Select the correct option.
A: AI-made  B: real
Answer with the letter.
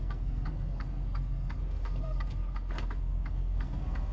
A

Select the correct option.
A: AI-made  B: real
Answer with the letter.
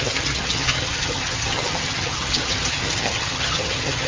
A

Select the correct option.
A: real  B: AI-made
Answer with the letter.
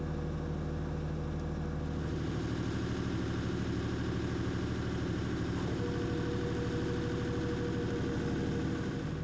A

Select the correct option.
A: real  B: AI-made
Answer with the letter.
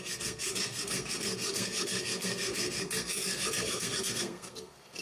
B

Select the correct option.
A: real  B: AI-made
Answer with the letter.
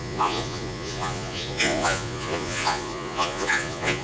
B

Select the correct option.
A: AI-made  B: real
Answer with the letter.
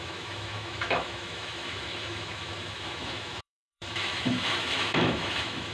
A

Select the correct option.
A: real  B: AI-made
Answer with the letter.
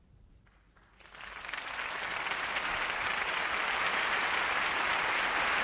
A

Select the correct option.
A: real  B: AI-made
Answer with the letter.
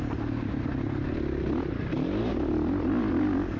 A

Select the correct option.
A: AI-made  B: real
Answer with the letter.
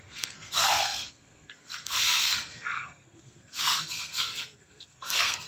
A